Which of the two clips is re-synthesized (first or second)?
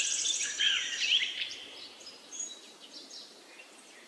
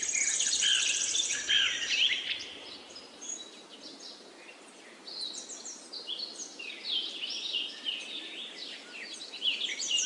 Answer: first